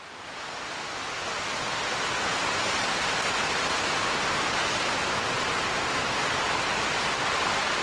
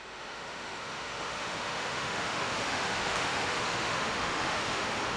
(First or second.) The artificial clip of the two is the second